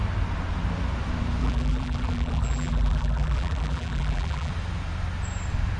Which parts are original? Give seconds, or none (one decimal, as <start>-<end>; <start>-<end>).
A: 0.0-1.4; 4.5-5.8